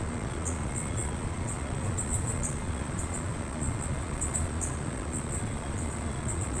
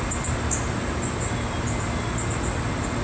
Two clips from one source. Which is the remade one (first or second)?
first